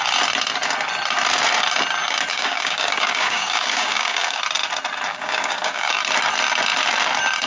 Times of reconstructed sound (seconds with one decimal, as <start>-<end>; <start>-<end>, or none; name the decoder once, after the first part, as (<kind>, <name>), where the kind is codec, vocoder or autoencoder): 2.3-4.4 (codec, DAC); 5.1-5.9